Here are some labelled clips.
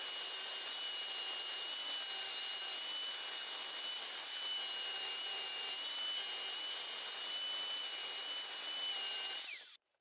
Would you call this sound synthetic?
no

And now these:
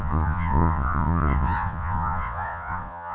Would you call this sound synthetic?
yes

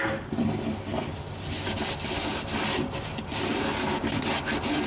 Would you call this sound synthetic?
no